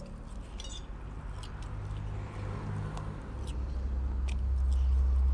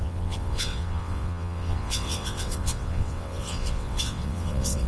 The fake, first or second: second